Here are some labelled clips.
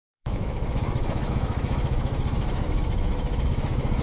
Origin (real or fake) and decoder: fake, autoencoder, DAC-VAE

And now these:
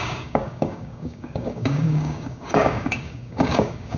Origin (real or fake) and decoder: fake, codec, DAC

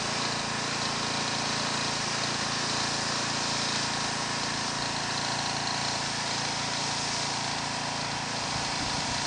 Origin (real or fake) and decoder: real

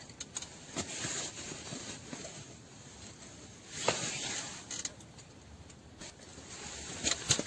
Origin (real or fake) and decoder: real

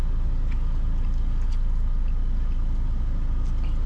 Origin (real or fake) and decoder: real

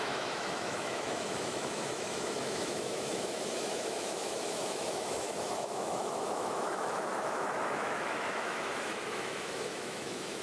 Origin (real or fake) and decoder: fake, autoencoder, DAC-VAE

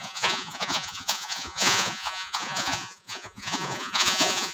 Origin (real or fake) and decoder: fake, vocoder, Vocos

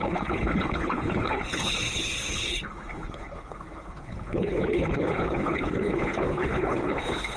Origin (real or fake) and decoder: fake, codec, HILCodec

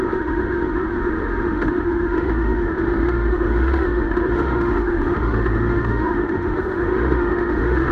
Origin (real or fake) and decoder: fake, autoencoder, DAC-VAE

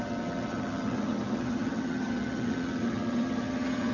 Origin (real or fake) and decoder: fake, vocoder, HiFi-GAN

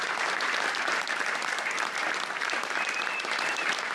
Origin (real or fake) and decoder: real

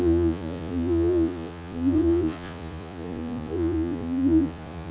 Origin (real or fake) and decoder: fake, vocoder, Vocos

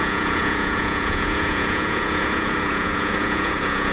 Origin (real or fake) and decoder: fake, vocoder, Vocos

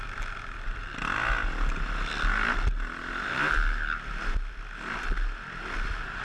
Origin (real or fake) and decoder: real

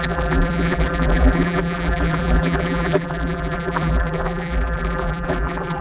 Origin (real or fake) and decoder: fake, vocoder, BigVGAN v2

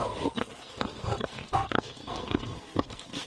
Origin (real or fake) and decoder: fake, codec, SNAC